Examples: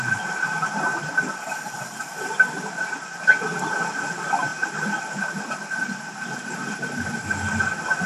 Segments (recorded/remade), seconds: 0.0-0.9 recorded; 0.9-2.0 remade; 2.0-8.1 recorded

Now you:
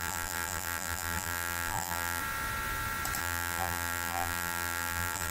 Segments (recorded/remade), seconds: 0.0-2.2 remade; 2.2-3.2 recorded; 3.2-5.3 remade

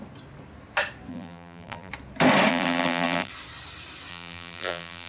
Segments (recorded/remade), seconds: 0.0-1.1 recorded; 1.1-1.9 remade; 1.9-2.5 recorded; 2.5-3.3 remade; 3.3-4.1 recorded; 4.1-5.1 remade